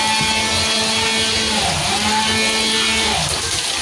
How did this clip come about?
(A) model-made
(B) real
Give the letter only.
B